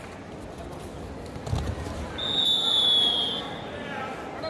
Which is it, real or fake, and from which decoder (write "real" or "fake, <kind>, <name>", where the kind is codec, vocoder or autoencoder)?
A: real